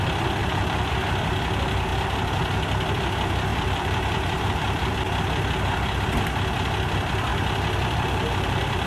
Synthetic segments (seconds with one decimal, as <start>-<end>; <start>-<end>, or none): 0.4-0.9; 3.5-4.9; 7.3-8.9